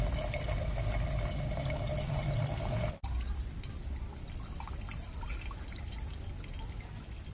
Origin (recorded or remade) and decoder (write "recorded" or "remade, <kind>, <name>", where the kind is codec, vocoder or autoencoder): recorded